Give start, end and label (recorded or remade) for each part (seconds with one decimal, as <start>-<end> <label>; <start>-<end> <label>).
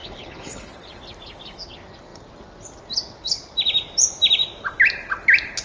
0.0-0.7 remade; 0.7-5.6 recorded